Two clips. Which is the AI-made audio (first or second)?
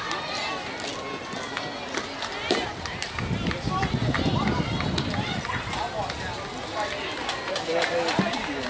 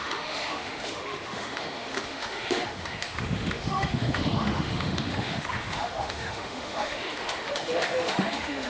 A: second